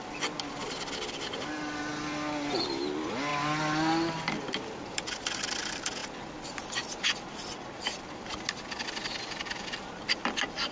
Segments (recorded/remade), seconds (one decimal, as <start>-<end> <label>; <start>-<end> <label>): 0.0-10.7 recorded